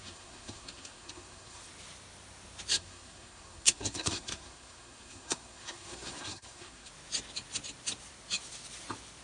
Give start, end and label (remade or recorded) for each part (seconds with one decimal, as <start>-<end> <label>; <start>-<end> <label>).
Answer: 0.0-1.6 remade; 1.6-2.7 recorded; 2.7-6.9 remade; 6.9-9.2 recorded